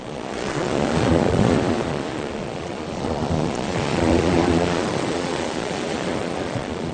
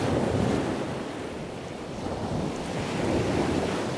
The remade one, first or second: first